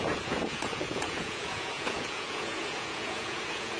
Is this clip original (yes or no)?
no